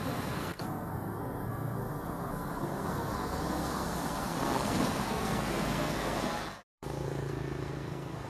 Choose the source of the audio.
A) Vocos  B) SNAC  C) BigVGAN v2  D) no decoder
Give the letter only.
B